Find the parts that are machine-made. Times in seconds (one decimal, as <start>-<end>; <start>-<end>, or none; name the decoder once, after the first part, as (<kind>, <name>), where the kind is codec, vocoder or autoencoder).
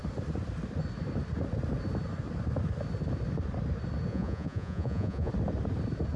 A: 4.1-5.3 (vocoder, Vocos)